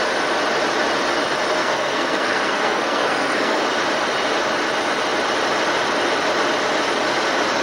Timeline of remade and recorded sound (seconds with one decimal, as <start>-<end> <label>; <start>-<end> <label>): 0.0-1.6 recorded; 1.6-3.6 remade; 3.6-7.6 recorded